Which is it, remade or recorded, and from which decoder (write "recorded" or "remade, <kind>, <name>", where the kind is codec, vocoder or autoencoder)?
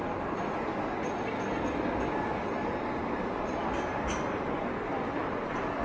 recorded